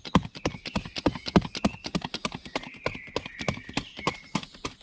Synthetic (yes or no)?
no